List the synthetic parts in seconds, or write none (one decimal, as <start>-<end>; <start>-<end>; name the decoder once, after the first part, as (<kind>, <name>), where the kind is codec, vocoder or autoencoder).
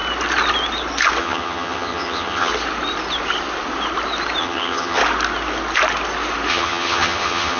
1.2-2.5 (vocoder, HiFi-GAN); 4.4-5.0; 6.5-7.6